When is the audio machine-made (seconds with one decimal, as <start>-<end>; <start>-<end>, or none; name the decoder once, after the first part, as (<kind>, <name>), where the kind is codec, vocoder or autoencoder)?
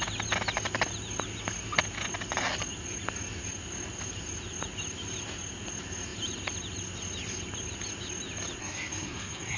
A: 8.6-9.6 (codec, SNAC)